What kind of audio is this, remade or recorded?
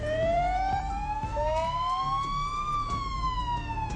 recorded